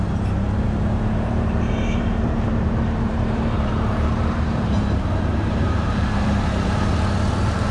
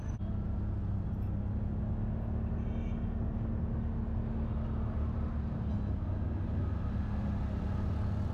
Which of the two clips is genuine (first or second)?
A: second